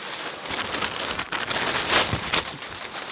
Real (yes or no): yes